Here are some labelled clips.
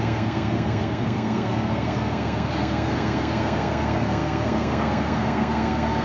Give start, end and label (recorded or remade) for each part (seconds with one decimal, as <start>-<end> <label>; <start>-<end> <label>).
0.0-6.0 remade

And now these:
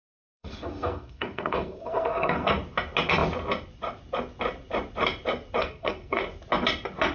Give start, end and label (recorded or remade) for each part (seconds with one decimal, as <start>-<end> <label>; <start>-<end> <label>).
0.0-2.5 remade; 2.5-5.6 recorded; 5.6-6.2 remade; 6.2-7.1 recorded

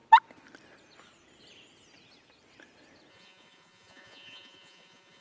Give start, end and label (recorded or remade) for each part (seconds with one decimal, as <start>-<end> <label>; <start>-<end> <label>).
0.0-3.1 recorded; 3.1-5.2 remade